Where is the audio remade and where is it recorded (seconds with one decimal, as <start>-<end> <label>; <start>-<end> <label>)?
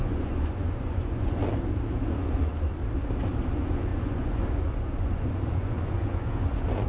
0.0-1.4 remade; 1.4-2.2 recorded; 2.2-2.8 remade; 2.8-3.5 recorded; 3.5-6.9 remade